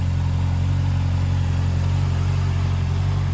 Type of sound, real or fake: real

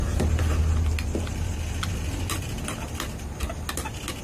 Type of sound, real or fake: real